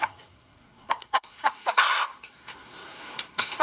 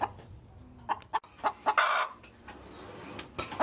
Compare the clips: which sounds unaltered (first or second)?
second